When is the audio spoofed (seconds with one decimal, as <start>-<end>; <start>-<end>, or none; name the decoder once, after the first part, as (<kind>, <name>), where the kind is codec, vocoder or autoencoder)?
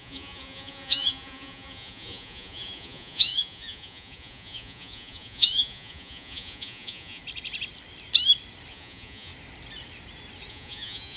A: 0.0-7.2 (vocoder, Vocos); 8.7-9.3; 10.5-11.2